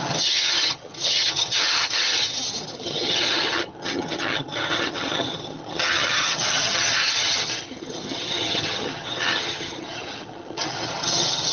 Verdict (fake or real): fake